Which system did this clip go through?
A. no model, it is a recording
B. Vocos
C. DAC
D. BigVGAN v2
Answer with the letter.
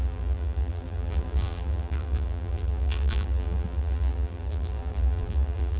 D